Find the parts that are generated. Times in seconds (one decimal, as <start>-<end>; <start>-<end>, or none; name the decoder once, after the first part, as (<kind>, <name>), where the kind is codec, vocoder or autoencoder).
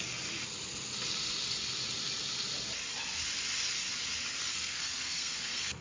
4.5-5.8 (codec, SNAC)